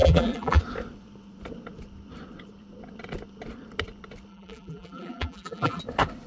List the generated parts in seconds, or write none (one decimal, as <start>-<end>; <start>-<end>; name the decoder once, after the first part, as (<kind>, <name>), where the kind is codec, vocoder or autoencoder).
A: 0.0-0.6 (vocoder, BigVGAN v2); 4.3-5.8